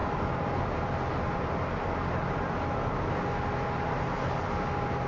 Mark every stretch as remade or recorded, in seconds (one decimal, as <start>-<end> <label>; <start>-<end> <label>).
0.0-5.1 recorded